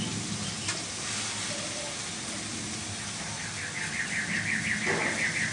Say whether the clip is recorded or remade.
recorded